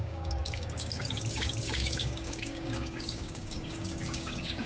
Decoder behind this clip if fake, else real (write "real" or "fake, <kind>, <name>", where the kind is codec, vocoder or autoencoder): fake, codec, DAC